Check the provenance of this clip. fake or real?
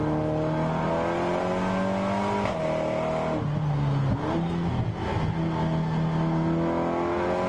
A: real